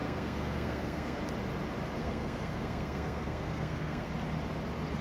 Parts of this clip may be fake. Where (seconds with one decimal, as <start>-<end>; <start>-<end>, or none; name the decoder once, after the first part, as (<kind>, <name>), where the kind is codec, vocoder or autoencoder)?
0.0-1.2 (codec, SNAC); 2.0-4.1